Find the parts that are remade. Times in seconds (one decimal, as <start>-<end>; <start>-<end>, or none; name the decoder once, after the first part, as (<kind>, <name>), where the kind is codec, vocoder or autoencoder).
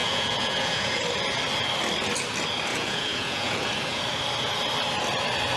0.0-1.0 (vocoder, Vocos); 2.7-4.0